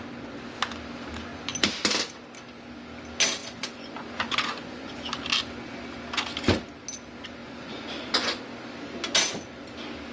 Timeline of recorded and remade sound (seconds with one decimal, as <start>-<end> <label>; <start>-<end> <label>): 0.0-3.4 recorded; 3.4-4.9 remade; 4.9-7.4 recorded; 7.4-8.4 remade; 8.4-10.1 recorded